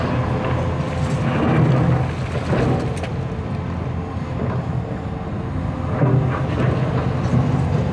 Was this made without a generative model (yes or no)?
yes